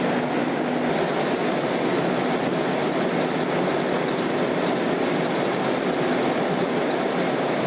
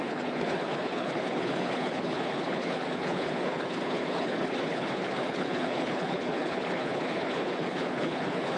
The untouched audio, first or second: first